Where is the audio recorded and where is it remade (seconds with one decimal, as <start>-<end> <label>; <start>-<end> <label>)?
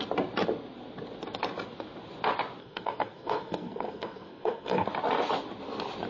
0.0-2.6 recorded; 2.6-4.9 remade; 4.9-6.1 recorded